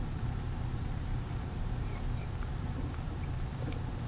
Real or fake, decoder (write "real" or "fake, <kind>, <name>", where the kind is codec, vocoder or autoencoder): fake, vocoder, BigVGAN v2